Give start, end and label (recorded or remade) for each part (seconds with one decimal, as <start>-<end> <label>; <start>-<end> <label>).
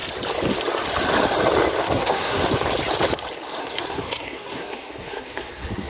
0.0-1.8 recorded; 1.8-2.4 remade; 2.4-3.6 recorded; 3.6-5.9 remade